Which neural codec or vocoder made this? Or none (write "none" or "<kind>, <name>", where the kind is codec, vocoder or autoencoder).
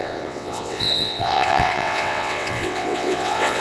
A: vocoder, WaveNeXt